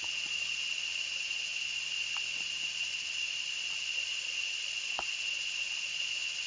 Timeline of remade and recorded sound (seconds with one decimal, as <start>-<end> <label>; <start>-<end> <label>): 0.0-6.5 recorded